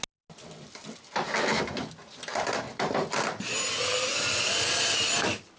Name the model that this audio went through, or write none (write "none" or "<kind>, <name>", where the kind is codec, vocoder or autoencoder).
none